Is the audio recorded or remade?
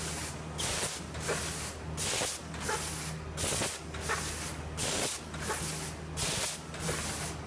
recorded